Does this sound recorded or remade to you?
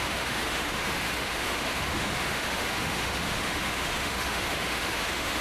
remade